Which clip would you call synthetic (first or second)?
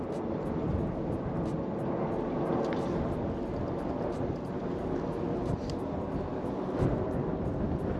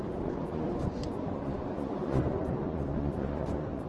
second